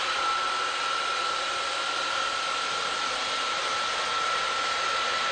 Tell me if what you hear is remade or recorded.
recorded